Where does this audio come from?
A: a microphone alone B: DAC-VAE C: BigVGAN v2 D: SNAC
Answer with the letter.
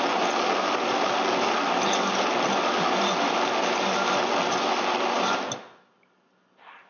A